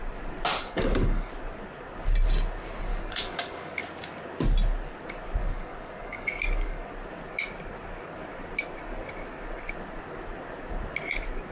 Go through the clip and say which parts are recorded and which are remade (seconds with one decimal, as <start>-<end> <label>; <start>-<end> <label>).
0.0-0.5 recorded; 0.5-1.3 remade; 1.3-2.9 recorded; 2.9-3.8 remade; 3.8-5.4 recorded; 5.4-6.9 remade; 6.9-11.5 recorded